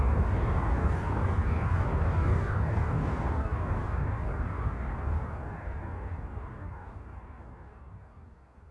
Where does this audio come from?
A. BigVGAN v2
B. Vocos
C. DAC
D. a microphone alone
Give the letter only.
C